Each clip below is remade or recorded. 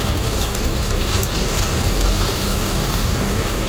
remade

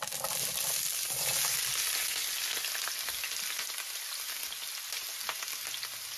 recorded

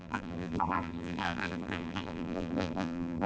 remade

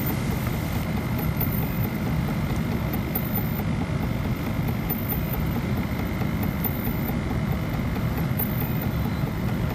remade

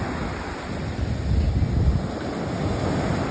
recorded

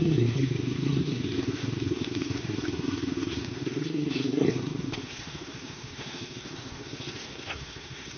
remade